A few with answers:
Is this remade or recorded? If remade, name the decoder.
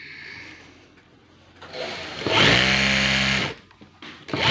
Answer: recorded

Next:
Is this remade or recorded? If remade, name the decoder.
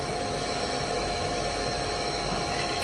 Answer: remade, autoencoder, DAC-VAE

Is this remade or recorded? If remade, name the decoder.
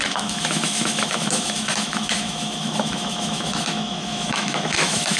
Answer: remade, autoencoder, DAC-VAE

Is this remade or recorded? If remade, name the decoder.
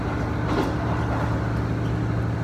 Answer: recorded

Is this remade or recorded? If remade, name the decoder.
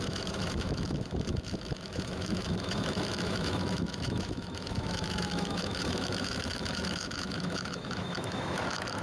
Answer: remade, autoencoder, DAC-VAE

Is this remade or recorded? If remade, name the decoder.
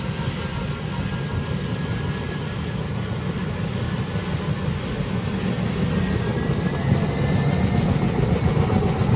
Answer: recorded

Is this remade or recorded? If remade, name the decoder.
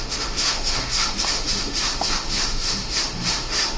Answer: remade, autoencoder, DAC-VAE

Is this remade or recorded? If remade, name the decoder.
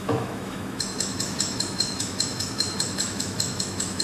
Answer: remade, autoencoder, DAC-VAE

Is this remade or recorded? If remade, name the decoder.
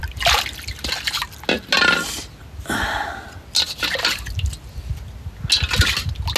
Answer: recorded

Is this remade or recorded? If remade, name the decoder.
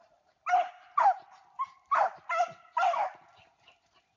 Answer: recorded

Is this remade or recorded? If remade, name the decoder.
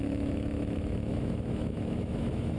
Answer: remade, autoencoder, DAC-VAE